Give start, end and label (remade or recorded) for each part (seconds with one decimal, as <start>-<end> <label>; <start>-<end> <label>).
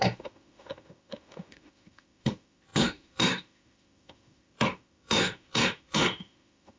0.0-6.8 remade